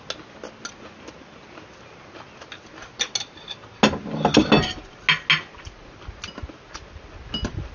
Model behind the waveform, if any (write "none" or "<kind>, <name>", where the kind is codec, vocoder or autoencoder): none